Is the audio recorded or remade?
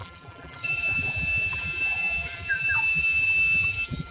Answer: remade